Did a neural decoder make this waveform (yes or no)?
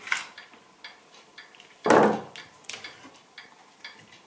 no